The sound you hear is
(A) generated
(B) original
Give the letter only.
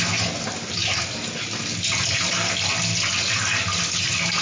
B